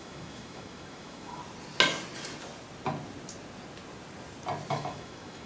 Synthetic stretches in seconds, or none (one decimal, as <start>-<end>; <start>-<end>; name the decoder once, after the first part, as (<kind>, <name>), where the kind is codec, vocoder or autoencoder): 0.0-1.4 (autoencoder, DAC-VAE); 4.7-5.5